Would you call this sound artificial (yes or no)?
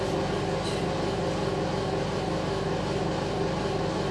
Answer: no